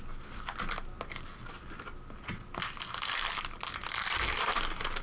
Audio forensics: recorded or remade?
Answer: recorded